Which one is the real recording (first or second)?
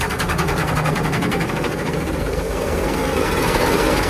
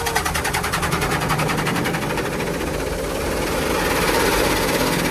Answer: second